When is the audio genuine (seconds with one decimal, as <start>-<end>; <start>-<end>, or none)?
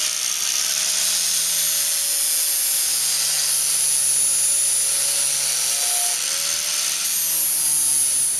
0.0-8.4